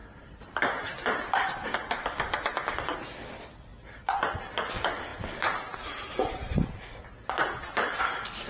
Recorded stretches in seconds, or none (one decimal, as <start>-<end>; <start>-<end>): 0.6-3.7; 4.5-8.5